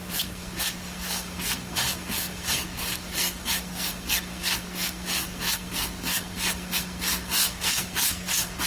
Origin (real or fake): fake